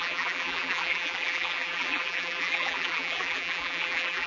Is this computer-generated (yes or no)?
yes